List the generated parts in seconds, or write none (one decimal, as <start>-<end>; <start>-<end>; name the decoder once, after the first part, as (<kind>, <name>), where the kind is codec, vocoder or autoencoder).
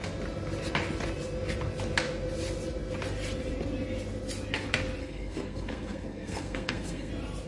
5.0-7.1 (codec, SNAC)